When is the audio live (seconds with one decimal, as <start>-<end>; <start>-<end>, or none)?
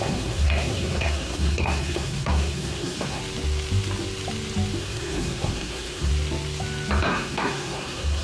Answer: 3.2-4.8; 6.1-7.0